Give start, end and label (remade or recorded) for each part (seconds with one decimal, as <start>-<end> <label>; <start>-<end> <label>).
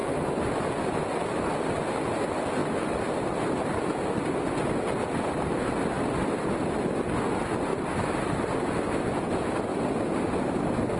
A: 0.0-11.0 recorded